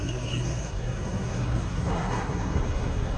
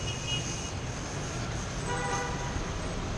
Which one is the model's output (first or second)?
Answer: first